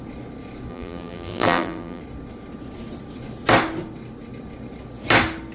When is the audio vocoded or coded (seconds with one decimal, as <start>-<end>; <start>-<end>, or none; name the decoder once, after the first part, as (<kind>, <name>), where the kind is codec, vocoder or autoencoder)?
0.7-2.0 (vocoder, BigVGAN v2)